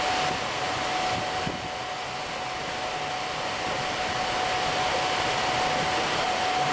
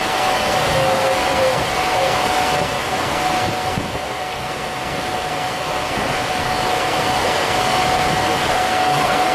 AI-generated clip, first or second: second